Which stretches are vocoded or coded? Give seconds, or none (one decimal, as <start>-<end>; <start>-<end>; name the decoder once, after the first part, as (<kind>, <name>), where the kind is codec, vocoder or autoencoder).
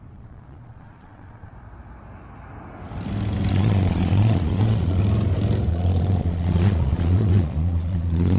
0.0-1.5 (vocoder, Vocos); 3.5-5.0; 5.7-8.4